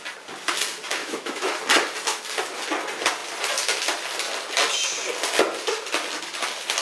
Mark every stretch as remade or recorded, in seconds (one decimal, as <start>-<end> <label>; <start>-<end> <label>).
0.0-1.0 recorded; 1.0-1.6 remade; 1.6-6.8 recorded